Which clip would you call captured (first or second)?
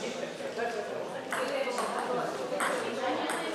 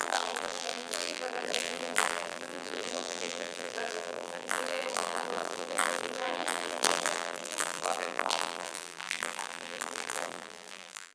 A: first